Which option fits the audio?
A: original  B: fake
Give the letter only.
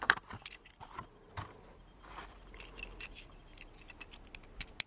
A